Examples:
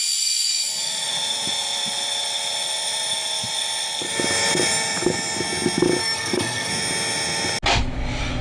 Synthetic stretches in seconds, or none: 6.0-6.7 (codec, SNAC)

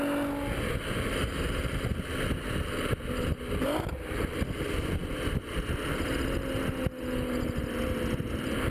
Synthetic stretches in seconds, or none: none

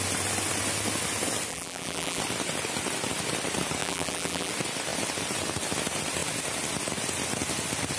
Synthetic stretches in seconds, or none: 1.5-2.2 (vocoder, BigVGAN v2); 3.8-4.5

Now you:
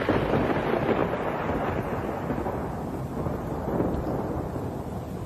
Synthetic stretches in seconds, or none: none